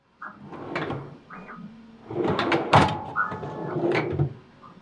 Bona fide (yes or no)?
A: yes